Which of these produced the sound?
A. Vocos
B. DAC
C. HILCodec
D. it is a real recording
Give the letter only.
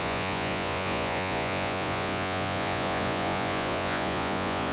A